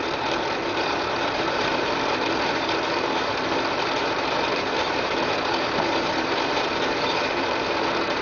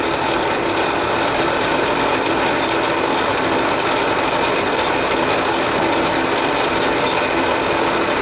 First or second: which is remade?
first